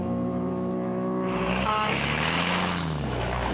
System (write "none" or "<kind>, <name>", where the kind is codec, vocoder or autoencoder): autoencoder, DAC-VAE